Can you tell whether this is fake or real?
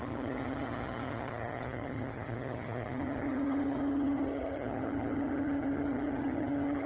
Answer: fake